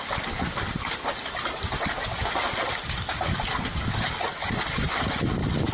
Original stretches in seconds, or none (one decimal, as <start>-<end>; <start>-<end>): 0.0-4.4; 5.3-5.7